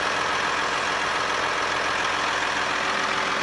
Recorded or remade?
recorded